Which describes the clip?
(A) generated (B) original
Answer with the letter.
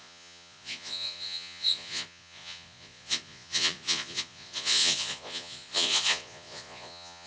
A